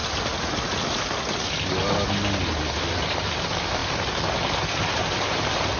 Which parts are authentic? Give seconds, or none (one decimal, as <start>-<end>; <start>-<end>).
0.0-5.8